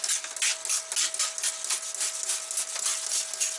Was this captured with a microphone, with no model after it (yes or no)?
yes